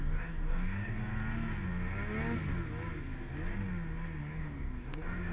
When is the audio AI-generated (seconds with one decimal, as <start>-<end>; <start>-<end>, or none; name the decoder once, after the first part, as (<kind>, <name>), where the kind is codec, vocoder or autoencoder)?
0.0-1.0 (codec, DAC); 4.2-5.3

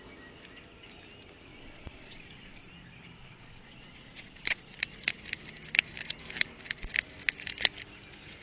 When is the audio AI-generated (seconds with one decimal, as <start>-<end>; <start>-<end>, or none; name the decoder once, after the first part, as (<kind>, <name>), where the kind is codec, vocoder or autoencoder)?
1.5-2.7 (vocoder, Vocos); 3.2-4.8

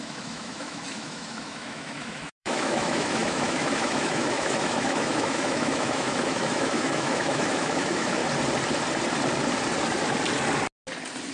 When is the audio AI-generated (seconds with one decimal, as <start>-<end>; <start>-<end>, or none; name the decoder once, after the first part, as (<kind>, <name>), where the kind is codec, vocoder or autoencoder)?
0.0-8.2 (autoencoder, DAC-VAE)